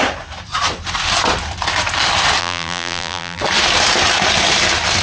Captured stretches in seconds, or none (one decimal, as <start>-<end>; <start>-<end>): 0.0-2.4; 3.4-5.0